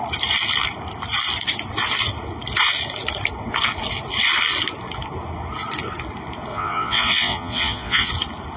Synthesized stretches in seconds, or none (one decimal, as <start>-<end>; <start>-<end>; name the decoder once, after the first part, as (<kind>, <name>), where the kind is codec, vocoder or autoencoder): 6.5-8.1 (vocoder, Vocos)